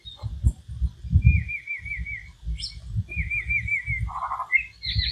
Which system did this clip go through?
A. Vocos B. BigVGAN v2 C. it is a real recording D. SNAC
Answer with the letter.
C